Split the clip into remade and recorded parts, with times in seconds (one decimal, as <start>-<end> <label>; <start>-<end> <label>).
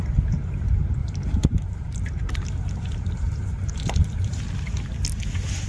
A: 0.0-1.0 recorded; 1.0-4.4 remade; 4.4-5.7 recorded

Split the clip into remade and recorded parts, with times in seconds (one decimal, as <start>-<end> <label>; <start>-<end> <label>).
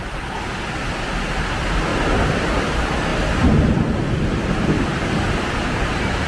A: 0.0-1.9 recorded; 1.9-2.7 remade; 2.7-3.1 recorded; 3.1-5.3 remade; 5.3-6.3 recorded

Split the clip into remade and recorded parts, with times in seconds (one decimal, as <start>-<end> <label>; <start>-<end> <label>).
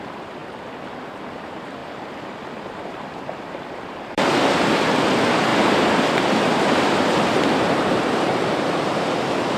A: 0.0-0.4 remade; 0.4-0.9 recorded; 0.9-9.6 remade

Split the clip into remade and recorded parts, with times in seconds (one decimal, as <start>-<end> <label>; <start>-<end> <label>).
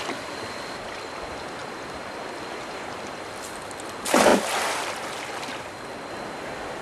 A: 0.0-1.6 recorded; 1.6-3.6 remade; 3.6-6.8 recorded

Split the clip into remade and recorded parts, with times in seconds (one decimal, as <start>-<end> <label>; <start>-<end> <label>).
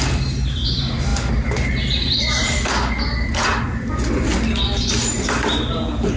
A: 0.0-6.2 recorded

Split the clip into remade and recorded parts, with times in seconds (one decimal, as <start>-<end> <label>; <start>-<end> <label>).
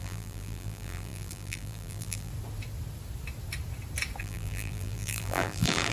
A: 0.0-2.3 remade; 2.3-4.2 recorded; 4.2-5.9 remade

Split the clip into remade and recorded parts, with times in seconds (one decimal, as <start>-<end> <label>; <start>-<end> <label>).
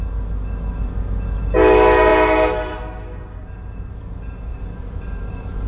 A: 0.0-3.4 recorded; 3.4-4.0 remade; 4.0-4.5 recorded; 4.5-5.7 remade